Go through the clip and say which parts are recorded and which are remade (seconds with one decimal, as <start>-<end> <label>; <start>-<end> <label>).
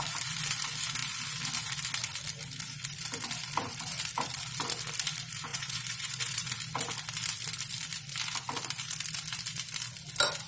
0.0-5.5 recorded; 5.5-6.5 remade; 6.5-10.5 recorded